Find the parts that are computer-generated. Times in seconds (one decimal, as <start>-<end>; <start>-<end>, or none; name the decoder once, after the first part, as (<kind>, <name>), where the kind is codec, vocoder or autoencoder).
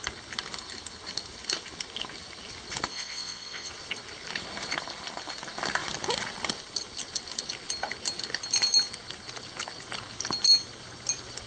2.9-3.7 (vocoder, WaveNeXt)